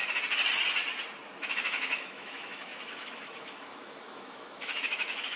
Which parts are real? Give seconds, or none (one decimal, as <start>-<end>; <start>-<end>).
0.0-1.4